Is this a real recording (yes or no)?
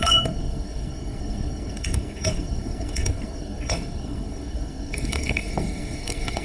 no